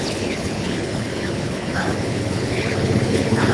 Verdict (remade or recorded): remade